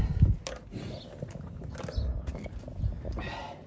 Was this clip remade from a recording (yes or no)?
no